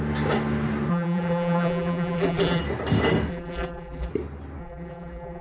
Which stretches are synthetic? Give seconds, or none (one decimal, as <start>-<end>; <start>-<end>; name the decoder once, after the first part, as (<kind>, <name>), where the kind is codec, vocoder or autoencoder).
0.9-2.6 (vocoder, BigVGAN v2); 3.3-4.1; 4.6-5.4